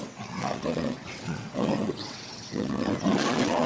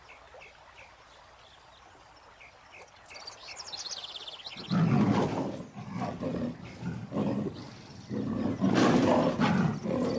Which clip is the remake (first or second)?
first